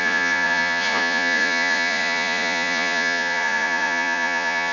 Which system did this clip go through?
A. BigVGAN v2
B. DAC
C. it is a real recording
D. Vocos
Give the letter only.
D